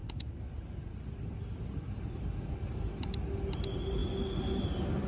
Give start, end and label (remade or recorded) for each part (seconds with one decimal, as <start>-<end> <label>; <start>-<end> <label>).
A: 0.0-5.1 recorded